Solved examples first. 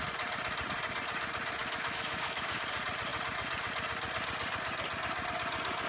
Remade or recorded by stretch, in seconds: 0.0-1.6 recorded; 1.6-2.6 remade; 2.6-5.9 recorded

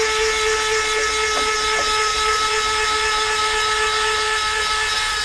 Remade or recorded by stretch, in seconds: 0.0-2.1 recorded; 2.1-5.2 remade

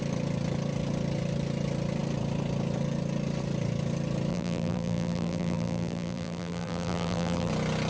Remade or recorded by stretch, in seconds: 0.0-4.3 recorded; 4.3-7.5 remade; 7.5-7.9 recorded

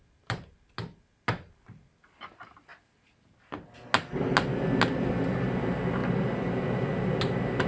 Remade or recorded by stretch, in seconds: 0.0-7.7 recorded

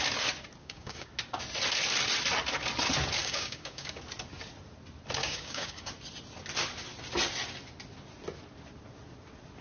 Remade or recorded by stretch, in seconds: 0.0-0.6 recorded; 0.6-1.1 remade; 1.1-3.2 recorded; 3.2-4.0 remade; 4.0-5.2 recorded; 5.2-5.9 remade; 5.9-9.6 recorded

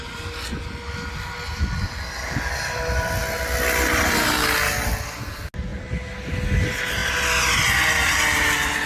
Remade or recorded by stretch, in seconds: 0.0-8.9 recorded

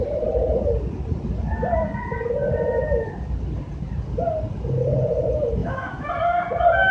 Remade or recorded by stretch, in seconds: 0.0-5.6 recorded; 5.6-6.1 remade; 6.1-6.9 recorded

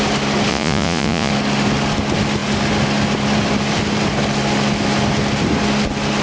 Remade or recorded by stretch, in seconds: 0.0-0.5 recorded; 0.5-1.3 remade; 1.3-6.2 recorded